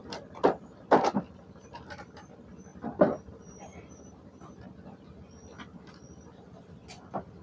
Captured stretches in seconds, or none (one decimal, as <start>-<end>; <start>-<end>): 0.0-7.4